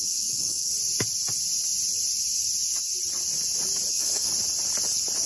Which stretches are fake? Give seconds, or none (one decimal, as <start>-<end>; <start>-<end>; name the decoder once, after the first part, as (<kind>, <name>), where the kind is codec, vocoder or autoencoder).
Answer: 0.0-0.7 (autoencoder, DAC-VAE); 3.9-4.3